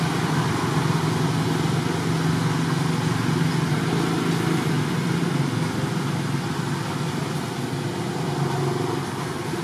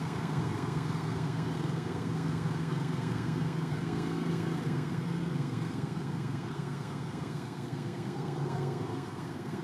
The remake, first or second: second